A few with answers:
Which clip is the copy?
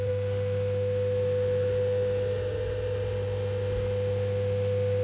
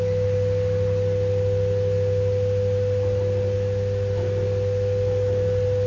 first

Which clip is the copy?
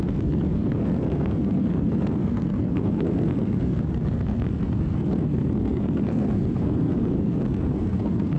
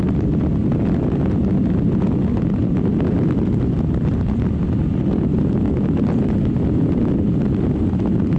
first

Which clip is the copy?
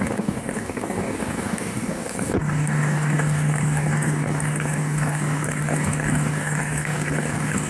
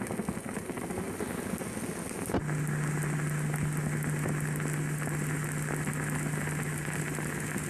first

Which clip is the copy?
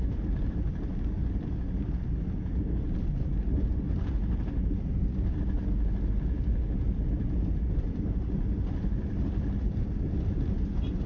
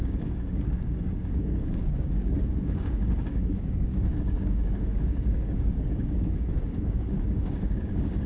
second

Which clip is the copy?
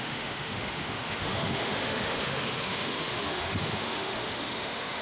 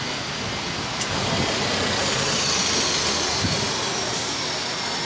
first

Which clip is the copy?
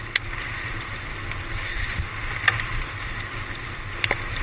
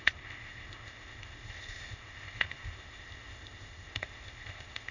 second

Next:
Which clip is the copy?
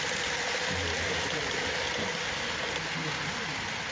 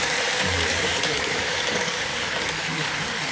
second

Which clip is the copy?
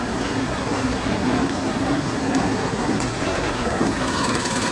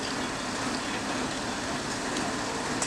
first